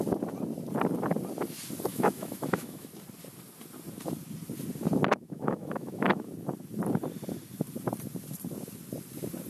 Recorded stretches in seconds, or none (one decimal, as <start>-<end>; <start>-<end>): 0.0-1.9; 2.9-5.1; 6.3-9.5